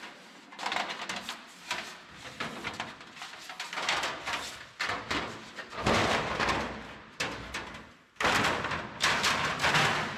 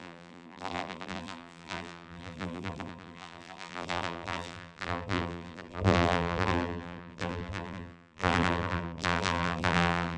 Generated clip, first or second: second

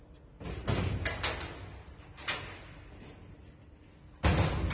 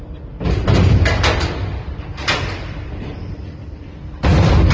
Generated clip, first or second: second